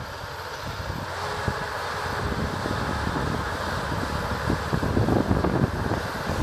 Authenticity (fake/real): real